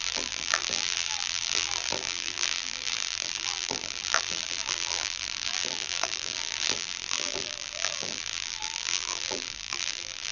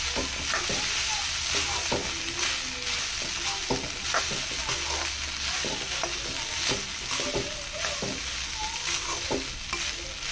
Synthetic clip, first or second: first